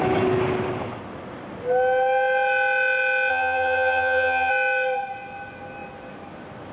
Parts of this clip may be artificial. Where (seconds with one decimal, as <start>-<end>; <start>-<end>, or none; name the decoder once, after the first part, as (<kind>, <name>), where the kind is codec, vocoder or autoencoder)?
3.3-4.5 (vocoder, HiFi-GAN)